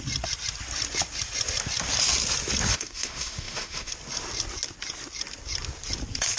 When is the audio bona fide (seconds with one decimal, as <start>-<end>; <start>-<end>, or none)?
0.0-2.7; 3.9-6.4